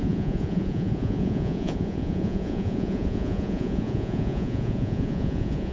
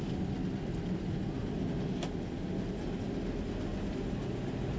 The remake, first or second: first